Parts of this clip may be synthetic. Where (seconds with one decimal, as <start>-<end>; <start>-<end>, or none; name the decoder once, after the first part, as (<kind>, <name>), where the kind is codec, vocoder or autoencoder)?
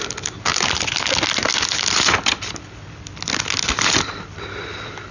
none